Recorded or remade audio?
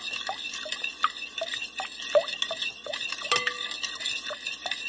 recorded